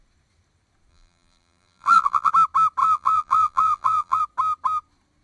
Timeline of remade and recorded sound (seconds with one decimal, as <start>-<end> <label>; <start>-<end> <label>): 0.0-0.9 recorded; 0.9-2.3 remade; 2.3-2.8 recorded; 2.8-4.2 remade; 4.2-5.2 recorded